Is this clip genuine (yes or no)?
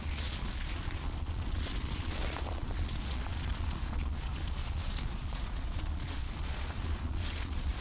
no